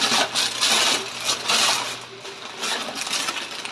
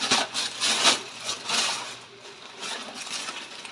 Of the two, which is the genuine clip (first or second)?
first